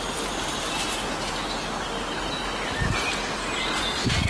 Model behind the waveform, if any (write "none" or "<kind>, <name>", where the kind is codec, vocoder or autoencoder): none